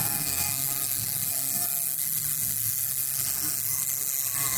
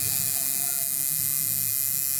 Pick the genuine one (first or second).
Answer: second